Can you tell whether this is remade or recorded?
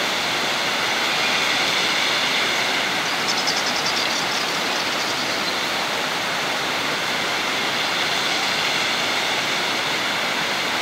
recorded